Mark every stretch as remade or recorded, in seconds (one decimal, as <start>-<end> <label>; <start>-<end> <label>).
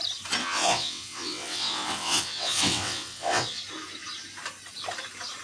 0.0-0.4 recorded; 0.4-3.6 remade; 3.6-5.4 recorded